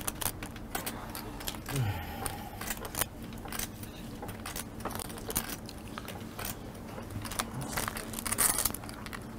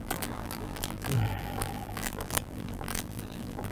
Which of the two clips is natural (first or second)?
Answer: first